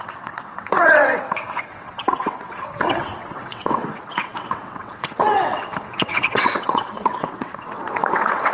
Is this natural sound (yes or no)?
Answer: no